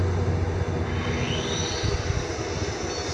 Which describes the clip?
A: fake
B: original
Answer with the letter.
B